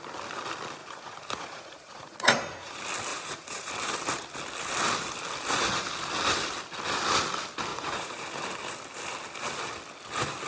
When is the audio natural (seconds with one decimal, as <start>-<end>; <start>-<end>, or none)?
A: 0.0-0.8; 2.7-3.1; 3.7-7.7; 8.2-10.5